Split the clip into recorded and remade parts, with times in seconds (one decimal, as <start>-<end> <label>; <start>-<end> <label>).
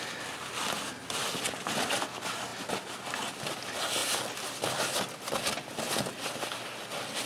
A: 0.0-7.3 recorded